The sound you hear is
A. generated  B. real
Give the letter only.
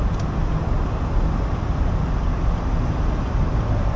B